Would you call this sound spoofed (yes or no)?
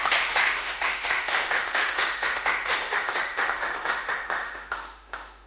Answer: yes